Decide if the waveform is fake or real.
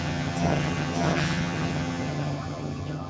fake